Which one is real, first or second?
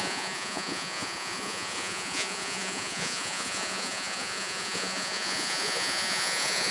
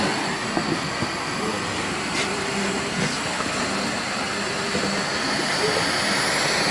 second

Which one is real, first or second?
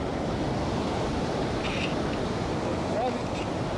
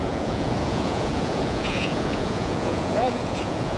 first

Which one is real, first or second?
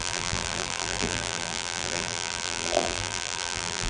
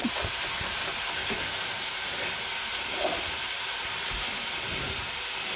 second